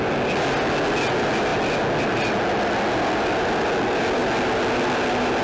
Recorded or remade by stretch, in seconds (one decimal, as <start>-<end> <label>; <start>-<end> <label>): 0.0-5.4 recorded